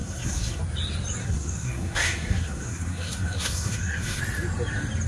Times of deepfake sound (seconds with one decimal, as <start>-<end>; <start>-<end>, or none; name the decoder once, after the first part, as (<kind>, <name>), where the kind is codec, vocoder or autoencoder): 0.0-0.6 (codec, SNAC); 1.2-4.2